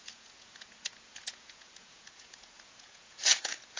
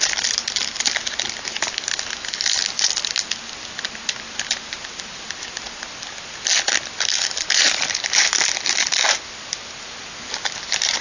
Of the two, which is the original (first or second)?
second